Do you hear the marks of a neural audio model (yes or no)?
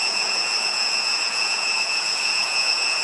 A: yes